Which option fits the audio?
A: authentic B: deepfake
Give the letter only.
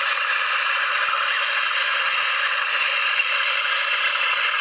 A